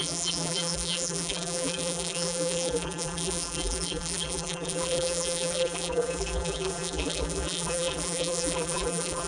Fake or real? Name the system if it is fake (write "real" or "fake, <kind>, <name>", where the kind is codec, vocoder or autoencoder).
fake, vocoder, BigVGAN v2